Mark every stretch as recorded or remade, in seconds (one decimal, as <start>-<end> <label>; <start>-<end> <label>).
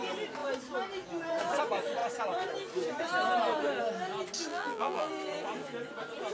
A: 0.0-4.5 recorded; 4.5-5.1 remade; 5.1-6.3 recorded